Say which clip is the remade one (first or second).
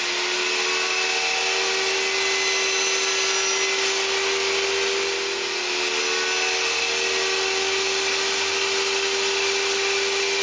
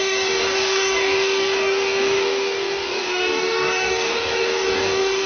second